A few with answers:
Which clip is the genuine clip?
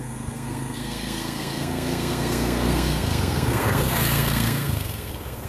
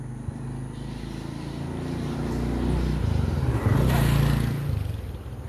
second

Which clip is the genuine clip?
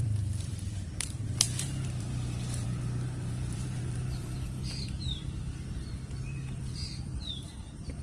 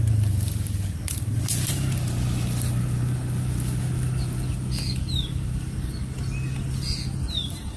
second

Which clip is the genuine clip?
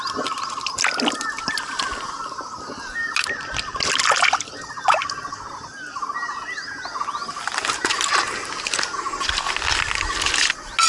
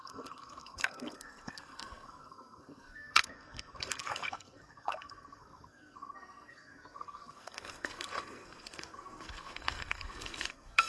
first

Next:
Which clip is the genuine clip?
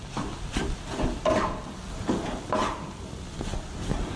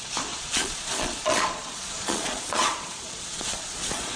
first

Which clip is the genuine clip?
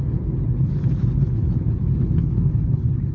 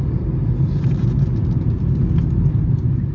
second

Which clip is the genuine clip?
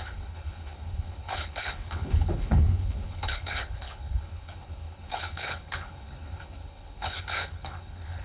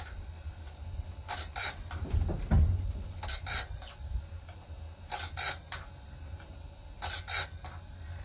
second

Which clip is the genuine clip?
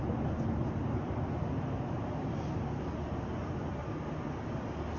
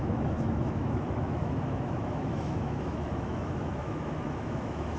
first